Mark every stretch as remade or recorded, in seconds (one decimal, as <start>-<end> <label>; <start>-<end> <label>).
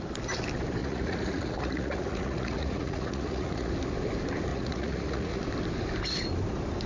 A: 0.0-0.8 recorded; 0.8-3.7 remade; 3.7-4.5 recorded; 4.5-5.4 remade; 5.4-6.9 recorded